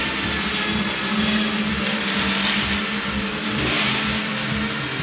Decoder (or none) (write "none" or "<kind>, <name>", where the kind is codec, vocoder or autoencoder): none